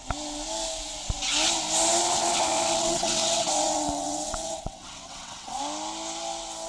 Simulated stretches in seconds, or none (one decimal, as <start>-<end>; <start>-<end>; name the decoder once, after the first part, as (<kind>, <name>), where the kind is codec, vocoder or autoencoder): 2.0-5.6 (vocoder, WaveNeXt)